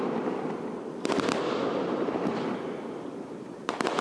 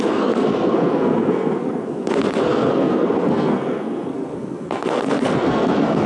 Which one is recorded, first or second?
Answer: first